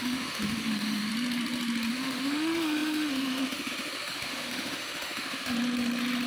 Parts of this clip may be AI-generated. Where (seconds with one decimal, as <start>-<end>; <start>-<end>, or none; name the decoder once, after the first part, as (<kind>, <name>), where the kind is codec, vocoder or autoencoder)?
0.0-1.1 (autoencoder, DAC-VAE); 1.9-5.5